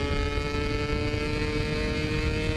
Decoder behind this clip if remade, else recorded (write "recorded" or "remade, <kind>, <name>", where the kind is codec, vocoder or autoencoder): recorded